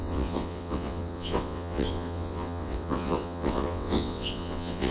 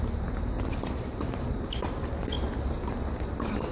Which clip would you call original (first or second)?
second